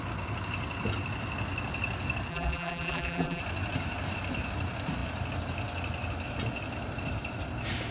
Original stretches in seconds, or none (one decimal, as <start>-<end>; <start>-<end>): 0.0-2.3; 3.4-7.9